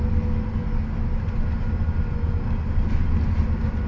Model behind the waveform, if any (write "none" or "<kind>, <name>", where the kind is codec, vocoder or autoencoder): none